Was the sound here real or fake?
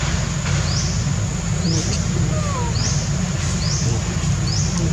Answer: real